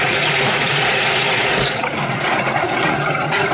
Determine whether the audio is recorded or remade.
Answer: remade